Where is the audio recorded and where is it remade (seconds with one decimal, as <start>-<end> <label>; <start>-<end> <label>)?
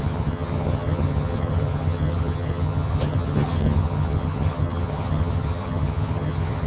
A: 0.0-6.7 remade